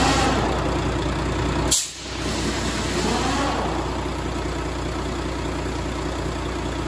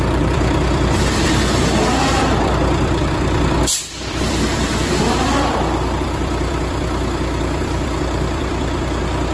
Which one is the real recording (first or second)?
first